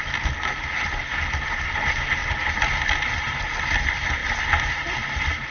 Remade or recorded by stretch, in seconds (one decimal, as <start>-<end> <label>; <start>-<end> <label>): 0.0-5.5 recorded